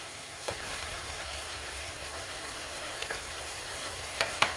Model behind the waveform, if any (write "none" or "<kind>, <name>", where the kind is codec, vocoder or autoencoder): codec, SNAC